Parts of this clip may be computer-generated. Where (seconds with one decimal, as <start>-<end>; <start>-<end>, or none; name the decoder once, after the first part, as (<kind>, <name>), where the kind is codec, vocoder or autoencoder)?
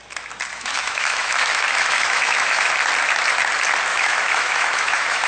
0.5-2.7 (autoencoder, DAC-VAE); 3.9-5.3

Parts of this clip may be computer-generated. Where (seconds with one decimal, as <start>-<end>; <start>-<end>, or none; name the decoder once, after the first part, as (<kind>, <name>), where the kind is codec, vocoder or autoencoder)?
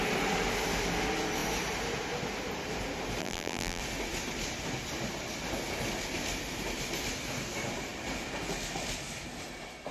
3.2-3.8 (vocoder, BigVGAN v2)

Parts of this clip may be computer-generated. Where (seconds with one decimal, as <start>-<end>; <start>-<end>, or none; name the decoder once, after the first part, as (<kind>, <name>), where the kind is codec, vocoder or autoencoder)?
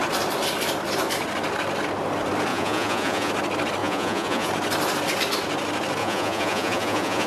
2.5-3.3 (vocoder, Vocos); 3.8-4.5; 6.0-7.3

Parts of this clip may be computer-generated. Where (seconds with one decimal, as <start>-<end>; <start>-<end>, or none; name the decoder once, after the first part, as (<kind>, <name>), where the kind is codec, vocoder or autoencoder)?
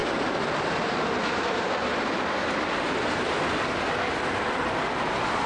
none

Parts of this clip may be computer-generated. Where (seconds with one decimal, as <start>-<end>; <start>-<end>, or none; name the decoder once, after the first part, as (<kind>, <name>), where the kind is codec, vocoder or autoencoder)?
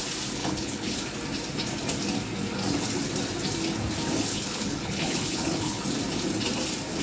0.4-1.0 (codec, HILCodec); 4.3-5.8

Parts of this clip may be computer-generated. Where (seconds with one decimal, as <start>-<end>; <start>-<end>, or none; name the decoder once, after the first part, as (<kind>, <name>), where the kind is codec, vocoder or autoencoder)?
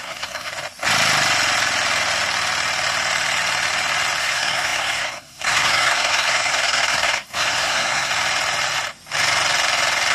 0.0-0.5 (codec, SNAC); 4.2-8.1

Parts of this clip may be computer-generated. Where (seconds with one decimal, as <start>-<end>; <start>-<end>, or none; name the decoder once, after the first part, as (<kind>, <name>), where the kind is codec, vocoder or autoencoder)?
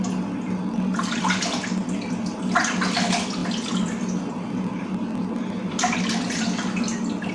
none